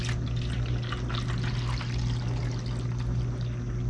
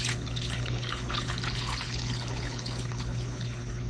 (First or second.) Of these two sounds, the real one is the first